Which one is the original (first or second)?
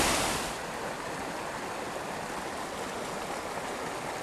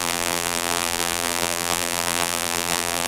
first